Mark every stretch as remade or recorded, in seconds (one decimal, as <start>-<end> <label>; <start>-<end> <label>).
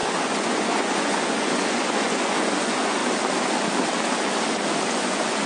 0.0-3.0 remade; 3.0-4.9 recorded; 4.9-5.5 remade